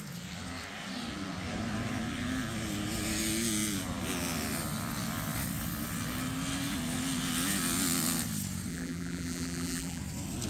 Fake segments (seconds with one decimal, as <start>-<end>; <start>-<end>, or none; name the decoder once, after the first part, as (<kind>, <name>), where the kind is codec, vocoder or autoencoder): 8.7-10.0 (vocoder, BigVGAN v2)